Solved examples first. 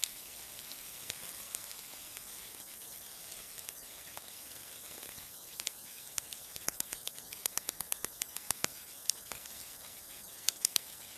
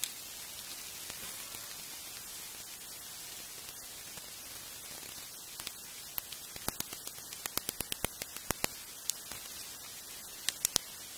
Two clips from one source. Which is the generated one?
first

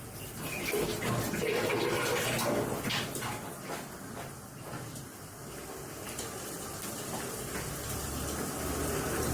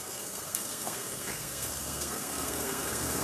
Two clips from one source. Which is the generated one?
second